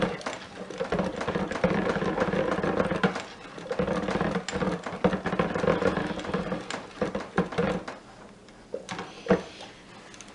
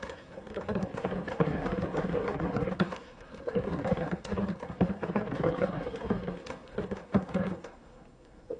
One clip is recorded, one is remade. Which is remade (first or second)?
second